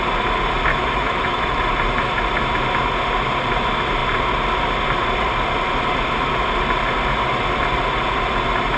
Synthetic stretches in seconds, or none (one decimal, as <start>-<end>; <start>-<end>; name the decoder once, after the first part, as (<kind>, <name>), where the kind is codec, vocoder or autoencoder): 0.7-1.6 (autoencoder, DAC-VAE)

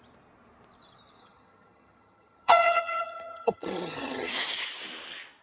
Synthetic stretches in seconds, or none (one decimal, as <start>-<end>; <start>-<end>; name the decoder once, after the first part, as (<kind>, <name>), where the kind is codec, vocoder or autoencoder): 1.2-4.3 (vocoder, HiFi-GAN)